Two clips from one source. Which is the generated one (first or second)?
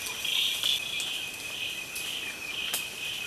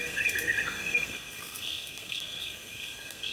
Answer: second